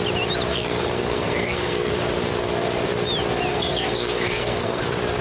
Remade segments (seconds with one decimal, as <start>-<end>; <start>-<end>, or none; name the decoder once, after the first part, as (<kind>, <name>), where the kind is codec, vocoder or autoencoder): 0.5-1.9 (codec, SNAC); 3.5-4.8